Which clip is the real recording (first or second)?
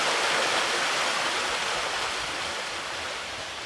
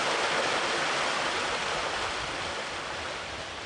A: second